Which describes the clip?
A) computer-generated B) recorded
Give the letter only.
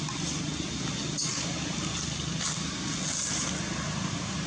B